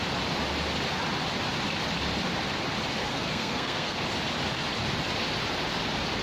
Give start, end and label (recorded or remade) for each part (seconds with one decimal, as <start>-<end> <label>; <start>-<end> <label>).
0.0-3.0 recorded; 3.0-4.0 remade; 4.0-6.2 recorded